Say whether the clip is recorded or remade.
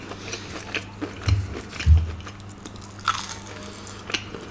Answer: recorded